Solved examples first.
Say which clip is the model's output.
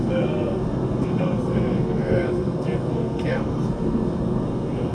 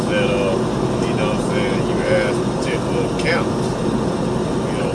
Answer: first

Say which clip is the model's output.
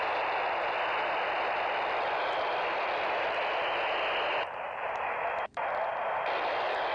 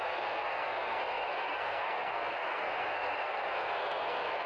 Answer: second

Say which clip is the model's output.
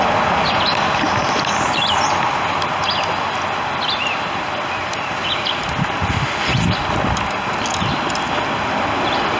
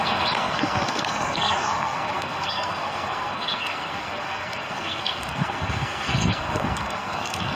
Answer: second